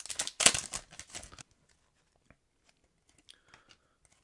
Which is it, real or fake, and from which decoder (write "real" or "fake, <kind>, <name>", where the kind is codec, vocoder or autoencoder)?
real